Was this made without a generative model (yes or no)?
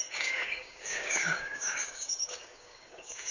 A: no